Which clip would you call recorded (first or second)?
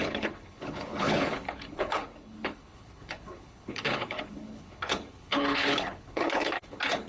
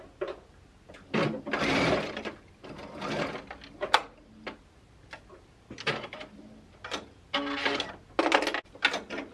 second